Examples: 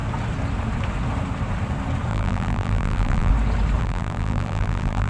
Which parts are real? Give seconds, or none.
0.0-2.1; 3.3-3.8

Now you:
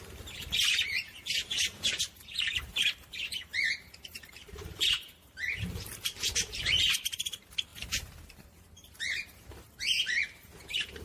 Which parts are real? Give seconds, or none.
none